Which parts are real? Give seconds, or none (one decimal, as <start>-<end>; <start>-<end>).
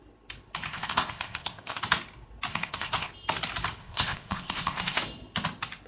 0.0-0.7; 1.8-2.5; 3.1-3.8; 5.0-5.9